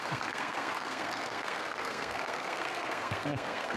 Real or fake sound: fake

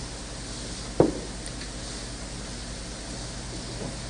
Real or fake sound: real